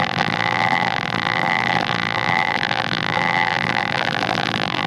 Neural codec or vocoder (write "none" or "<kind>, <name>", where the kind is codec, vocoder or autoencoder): vocoder, BigVGAN v2